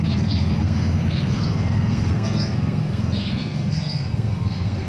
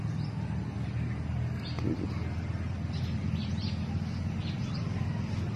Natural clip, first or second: second